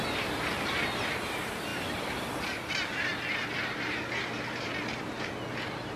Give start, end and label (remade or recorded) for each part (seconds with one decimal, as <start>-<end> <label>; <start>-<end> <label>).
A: 0.0-6.0 recorded